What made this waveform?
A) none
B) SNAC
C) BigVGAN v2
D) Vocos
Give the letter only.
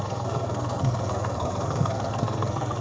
B